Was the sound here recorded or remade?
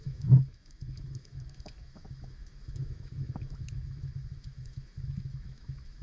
remade